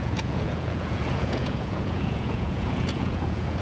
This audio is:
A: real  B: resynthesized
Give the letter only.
B